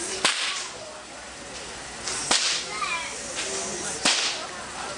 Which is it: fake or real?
real